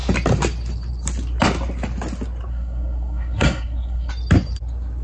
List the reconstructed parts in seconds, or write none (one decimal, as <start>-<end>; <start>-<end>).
2.5-4.1